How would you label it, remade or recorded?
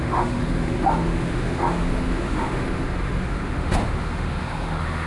remade